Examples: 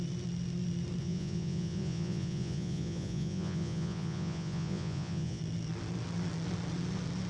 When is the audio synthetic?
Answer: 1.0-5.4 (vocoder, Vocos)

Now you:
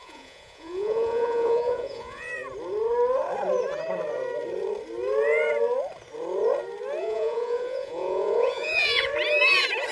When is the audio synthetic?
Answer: 0.0-2.3 (vocoder, Vocos); 7.0-9.1

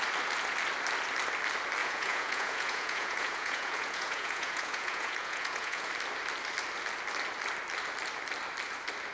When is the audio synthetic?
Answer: 1.8-5.9 (vocoder, Vocos)

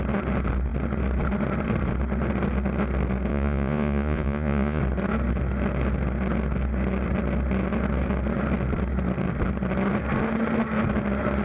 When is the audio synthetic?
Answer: 3.3-4.8 (vocoder, Vocos)

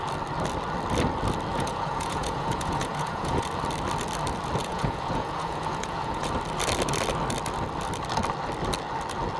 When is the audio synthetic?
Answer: 1.5-3.4 (vocoder, Vocos); 4.6-6.3